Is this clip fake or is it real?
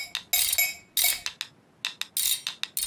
real